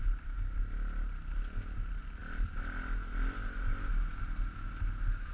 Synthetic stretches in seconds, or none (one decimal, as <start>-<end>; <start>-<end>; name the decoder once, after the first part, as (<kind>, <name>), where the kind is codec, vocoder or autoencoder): none